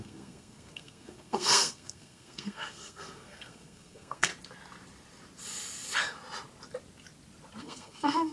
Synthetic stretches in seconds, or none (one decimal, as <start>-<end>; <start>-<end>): 0.0-4.3; 7.6-8.3